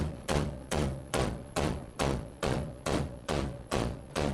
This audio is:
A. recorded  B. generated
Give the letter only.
B